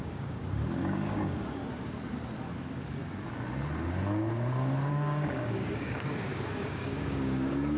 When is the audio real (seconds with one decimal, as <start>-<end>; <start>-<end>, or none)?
1.6-4.9